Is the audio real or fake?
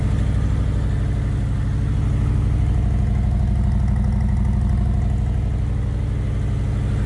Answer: real